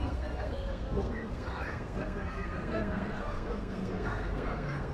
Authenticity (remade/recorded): remade